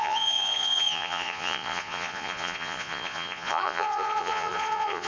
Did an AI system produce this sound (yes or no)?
yes